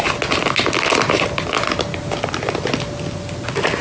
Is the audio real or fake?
real